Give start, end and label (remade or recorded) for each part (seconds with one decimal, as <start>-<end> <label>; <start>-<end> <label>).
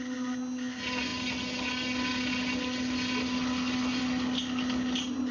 0.0-5.3 recorded